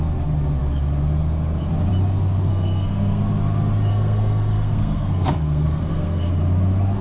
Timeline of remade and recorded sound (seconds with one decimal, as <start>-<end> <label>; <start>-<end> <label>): 0.0-2.5 recorded; 2.5-3.2 remade; 3.2-3.9 recorded; 3.9-6.3 remade; 6.3-7.0 recorded